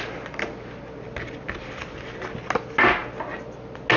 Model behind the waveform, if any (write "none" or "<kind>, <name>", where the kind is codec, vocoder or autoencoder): none